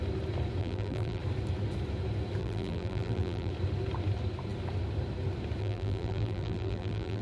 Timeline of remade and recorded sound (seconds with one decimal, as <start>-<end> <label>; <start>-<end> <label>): 0.0-0.6 recorded; 0.6-1.2 remade; 1.2-2.4 recorded; 2.4-3.5 remade; 3.5-5.6 recorded; 5.6-7.2 remade